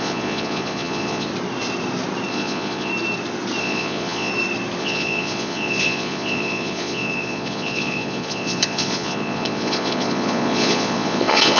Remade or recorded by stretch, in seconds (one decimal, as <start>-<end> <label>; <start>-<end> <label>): 0.0-1.3 remade; 1.3-2.3 recorded; 2.3-2.9 remade; 2.9-3.6 recorded; 3.6-4.3 remade; 4.3-4.8 recorded; 4.8-11.6 remade